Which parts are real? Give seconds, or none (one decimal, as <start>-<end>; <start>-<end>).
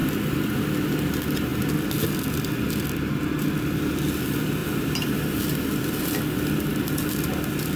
0.6-4.6; 5.4-7.8